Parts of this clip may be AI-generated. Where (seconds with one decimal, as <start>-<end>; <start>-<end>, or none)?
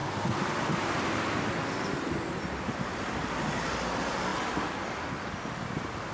none